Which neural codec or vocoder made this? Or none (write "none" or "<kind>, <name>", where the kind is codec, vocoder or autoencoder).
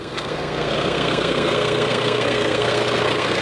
codec, SNAC